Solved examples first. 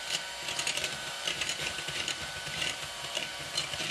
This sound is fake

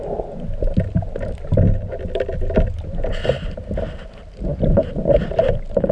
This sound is real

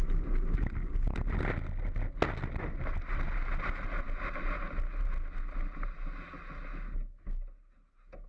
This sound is real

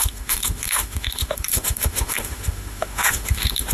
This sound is fake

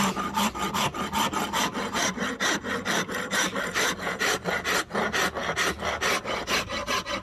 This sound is real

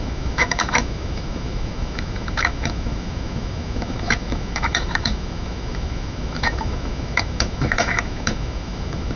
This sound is fake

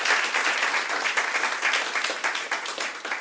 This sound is real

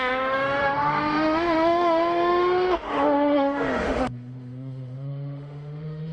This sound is fake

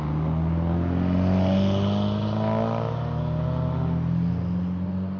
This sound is real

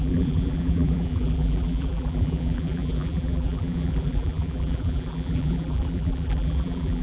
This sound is fake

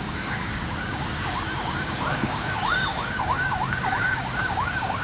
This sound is fake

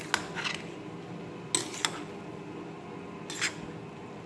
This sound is real